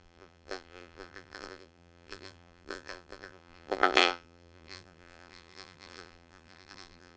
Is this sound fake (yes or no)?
yes